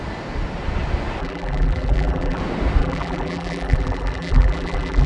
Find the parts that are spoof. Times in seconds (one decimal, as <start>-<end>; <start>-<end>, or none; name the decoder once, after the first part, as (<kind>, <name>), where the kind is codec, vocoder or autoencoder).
1.2-2.4 (vocoder, BigVGAN v2); 2.8-5.1